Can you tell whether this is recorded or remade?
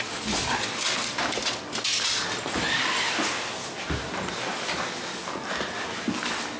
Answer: recorded